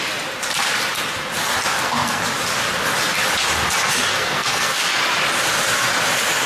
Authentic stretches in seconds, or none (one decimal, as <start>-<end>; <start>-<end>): 0.0-1.7; 2.2-4.1; 4.8-6.5